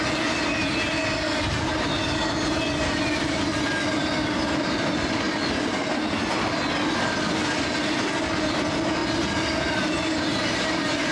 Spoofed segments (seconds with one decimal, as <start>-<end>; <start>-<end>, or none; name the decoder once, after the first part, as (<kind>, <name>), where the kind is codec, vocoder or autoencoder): none